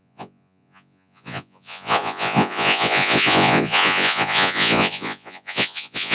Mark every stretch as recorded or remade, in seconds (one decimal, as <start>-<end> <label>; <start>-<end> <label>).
0.0-6.1 remade